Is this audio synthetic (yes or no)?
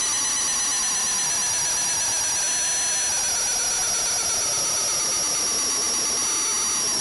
no